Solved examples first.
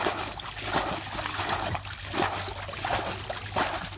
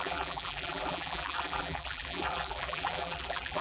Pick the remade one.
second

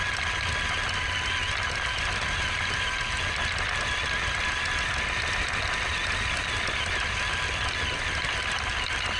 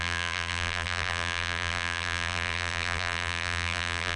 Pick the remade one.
second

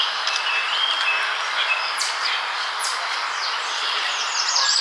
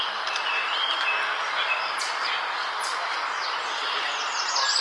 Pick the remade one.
first